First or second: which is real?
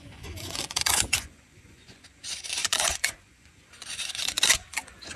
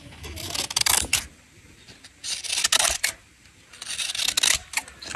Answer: second